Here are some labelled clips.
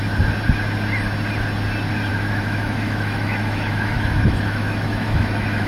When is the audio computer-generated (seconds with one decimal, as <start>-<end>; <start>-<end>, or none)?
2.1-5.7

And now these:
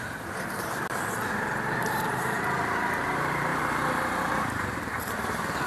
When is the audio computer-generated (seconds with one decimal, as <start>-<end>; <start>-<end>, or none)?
1.8-2.4; 3.5-5.0

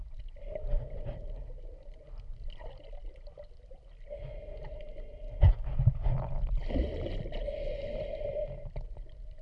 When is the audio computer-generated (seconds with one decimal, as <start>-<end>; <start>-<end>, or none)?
none